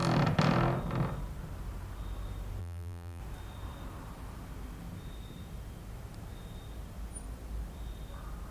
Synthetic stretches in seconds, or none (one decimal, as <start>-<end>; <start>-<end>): 2.6-3.2